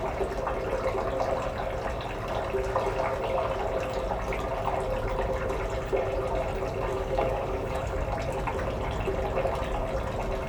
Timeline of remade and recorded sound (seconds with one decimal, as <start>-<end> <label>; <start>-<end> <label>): 0.0-6.9 recorded; 6.9-8.0 remade; 8.0-10.5 recorded